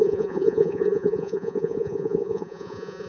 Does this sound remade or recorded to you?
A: remade